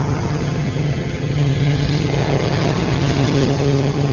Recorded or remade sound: remade